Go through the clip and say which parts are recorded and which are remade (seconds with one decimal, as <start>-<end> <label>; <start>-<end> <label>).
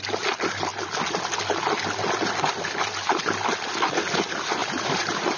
0.0-4.6 recorded; 4.6-5.4 remade